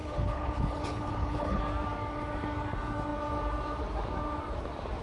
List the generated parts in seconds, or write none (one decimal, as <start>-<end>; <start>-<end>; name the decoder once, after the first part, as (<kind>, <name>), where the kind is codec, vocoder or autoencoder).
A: 0.0-1.6 (codec, HILCodec)